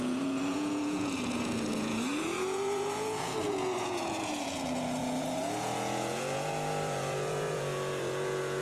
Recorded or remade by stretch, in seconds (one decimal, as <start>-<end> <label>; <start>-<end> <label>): 0.0-8.6 remade